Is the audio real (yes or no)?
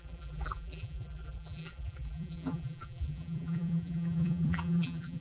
no